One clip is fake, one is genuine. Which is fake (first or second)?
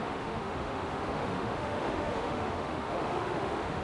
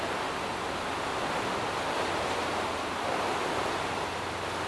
first